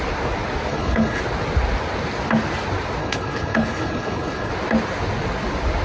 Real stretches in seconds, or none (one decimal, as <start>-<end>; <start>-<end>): 0.0-0.7; 1.2-3.0; 4.5-5.8